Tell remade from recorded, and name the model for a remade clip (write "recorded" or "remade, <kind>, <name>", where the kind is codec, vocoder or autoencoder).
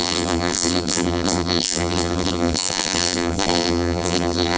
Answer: remade, vocoder, BigVGAN v2